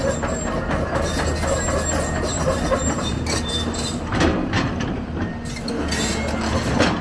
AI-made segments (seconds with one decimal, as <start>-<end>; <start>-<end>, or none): 2.3-5.3